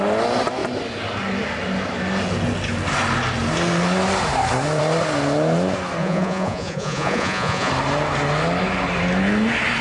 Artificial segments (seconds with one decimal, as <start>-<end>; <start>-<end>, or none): 6.0-7.7